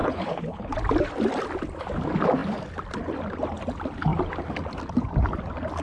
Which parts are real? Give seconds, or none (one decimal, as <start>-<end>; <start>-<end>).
0.7-5.8